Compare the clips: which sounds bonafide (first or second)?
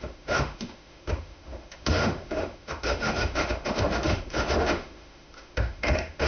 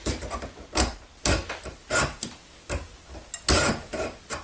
second